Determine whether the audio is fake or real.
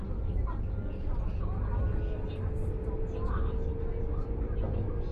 real